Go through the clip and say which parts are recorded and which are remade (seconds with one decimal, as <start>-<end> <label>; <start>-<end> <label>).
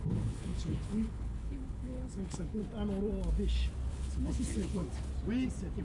0.0-2.6 remade; 2.6-3.9 recorded; 3.9-4.8 remade; 4.8-5.8 recorded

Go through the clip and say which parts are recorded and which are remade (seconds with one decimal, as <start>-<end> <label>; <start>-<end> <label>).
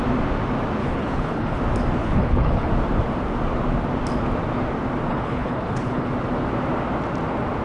0.0-0.8 recorded; 0.8-1.6 remade; 1.6-2.0 recorded; 2.0-2.7 remade; 2.7-5.1 recorded; 5.1-6.1 remade; 6.1-7.6 recorded